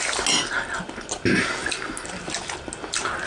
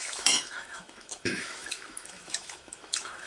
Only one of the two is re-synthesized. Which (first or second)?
second